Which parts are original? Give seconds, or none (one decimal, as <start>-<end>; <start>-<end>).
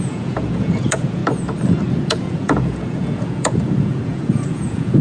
1.2-1.9